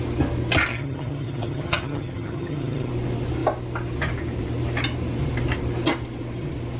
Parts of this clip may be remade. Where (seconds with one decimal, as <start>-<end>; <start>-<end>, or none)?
0.7-2.9